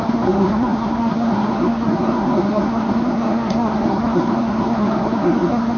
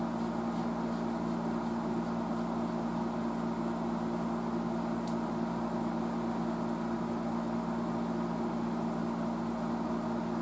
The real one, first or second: second